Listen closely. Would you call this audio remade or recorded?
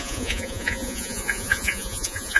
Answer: remade